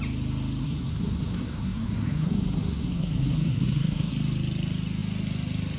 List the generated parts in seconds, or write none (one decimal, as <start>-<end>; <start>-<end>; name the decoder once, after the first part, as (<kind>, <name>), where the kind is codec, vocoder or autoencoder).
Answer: 0.6-4.1 (codec, SNAC)